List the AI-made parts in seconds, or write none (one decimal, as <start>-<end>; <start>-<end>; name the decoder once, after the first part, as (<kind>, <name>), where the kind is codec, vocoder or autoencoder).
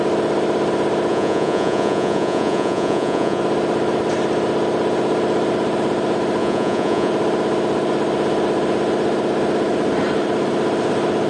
1.1-3.4 (vocoder, Vocos); 6.4-7.1